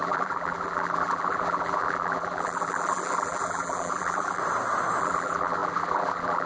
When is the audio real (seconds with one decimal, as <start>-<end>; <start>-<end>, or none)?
4.4-5.0